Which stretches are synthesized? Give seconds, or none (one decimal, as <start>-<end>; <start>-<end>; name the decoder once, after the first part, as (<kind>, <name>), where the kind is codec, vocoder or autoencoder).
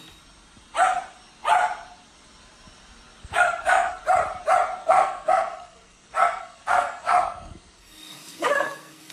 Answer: 3.2-4.0 (codec, SNAC); 4.8-9.1